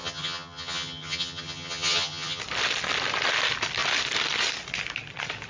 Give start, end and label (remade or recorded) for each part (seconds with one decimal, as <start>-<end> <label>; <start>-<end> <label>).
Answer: 0.0-2.4 remade; 2.4-5.5 recorded